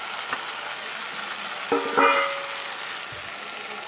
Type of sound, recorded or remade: recorded